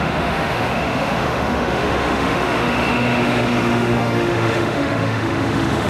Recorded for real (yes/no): no